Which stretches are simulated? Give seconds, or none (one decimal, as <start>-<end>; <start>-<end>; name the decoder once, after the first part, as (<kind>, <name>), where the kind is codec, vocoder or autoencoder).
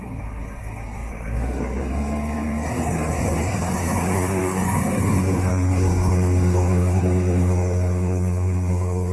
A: 0.0-9.1 (codec, SNAC)